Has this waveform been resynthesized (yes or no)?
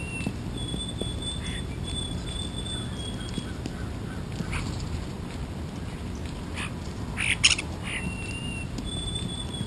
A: no